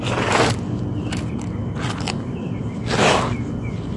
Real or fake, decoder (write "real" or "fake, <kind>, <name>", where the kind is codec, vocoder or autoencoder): real